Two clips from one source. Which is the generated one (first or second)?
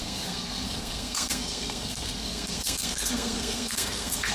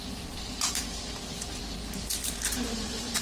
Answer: first